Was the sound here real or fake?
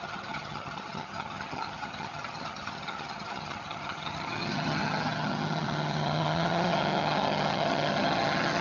fake